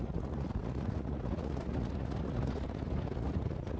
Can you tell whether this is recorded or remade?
remade